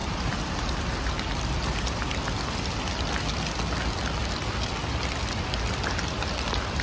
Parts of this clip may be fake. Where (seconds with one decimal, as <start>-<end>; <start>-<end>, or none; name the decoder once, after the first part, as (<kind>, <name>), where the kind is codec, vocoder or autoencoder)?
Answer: none